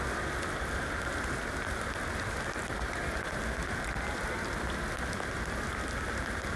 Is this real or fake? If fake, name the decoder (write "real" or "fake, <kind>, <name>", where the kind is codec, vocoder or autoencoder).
real